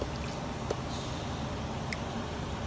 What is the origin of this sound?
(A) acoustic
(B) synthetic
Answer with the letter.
A